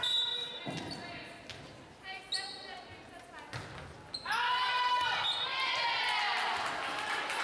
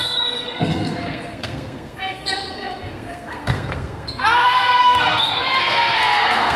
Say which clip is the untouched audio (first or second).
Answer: first